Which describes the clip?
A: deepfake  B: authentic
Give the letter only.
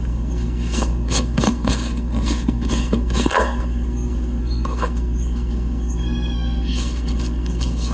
A